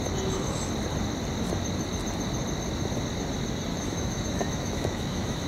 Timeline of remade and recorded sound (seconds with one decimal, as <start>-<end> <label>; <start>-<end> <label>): 0.0-3.7 recorded; 3.7-5.5 remade